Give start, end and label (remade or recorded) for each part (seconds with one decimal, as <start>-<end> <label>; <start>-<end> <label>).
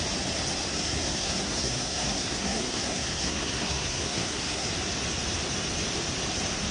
0.0-0.7 recorded; 0.7-4.7 remade; 4.7-6.7 recorded